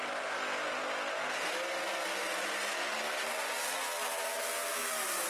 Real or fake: real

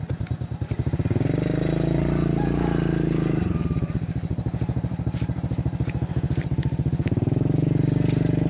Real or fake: real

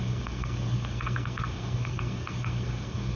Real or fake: fake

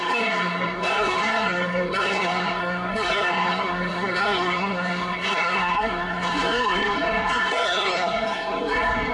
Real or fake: fake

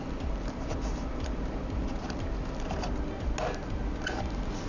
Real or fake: real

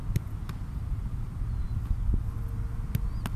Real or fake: real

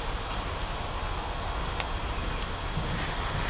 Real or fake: real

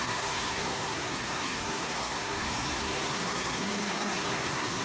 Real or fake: fake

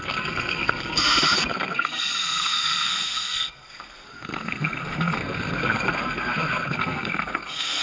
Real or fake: fake